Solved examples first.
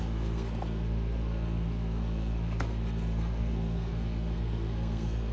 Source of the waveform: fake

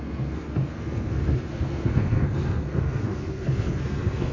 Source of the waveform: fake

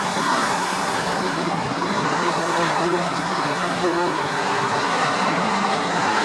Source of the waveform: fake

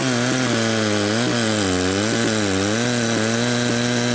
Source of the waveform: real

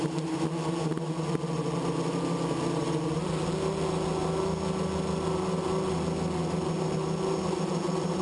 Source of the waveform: real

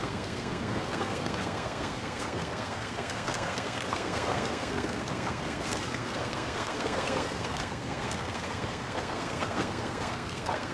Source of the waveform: fake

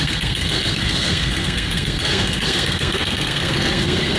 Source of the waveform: fake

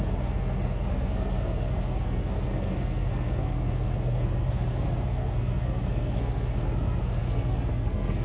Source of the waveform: fake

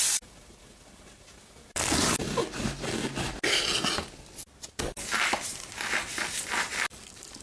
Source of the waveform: real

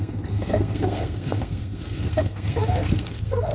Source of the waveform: fake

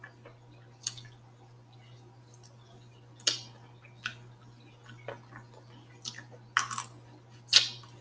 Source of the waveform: real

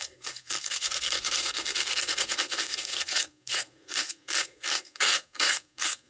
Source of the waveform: fake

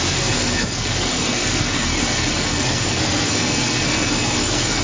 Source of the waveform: fake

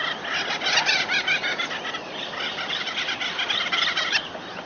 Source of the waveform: real